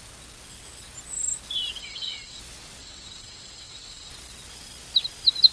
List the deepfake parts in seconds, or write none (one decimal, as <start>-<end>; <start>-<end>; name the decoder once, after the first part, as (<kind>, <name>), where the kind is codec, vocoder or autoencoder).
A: 1.8-2.4 (vocoder, WaveNeXt); 2.8-4.1